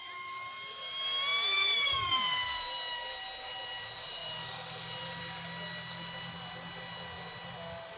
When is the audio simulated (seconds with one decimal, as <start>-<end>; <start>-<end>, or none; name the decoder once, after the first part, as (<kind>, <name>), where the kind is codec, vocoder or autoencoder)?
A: none